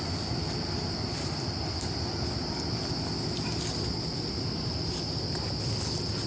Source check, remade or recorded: recorded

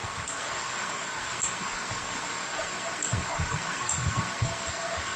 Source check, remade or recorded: remade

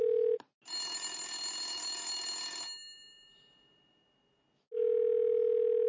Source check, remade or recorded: recorded